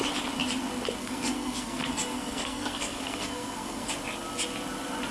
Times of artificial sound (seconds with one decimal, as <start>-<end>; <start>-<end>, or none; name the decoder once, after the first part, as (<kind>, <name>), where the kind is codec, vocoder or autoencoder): 1.0-3.9 (codec, SNAC)